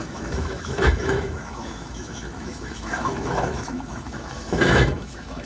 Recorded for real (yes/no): no